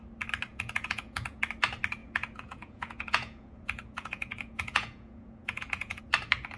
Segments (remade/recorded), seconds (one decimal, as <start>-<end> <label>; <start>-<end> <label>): 0.0-0.5 recorded; 0.5-1.4 remade; 1.4-2.0 recorded; 2.0-6.0 remade; 6.0-6.6 recorded